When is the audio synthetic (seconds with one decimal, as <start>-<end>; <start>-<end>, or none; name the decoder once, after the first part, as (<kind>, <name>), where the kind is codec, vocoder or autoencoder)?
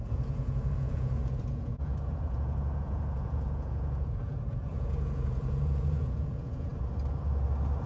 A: 0.0-6.7 (vocoder, Vocos)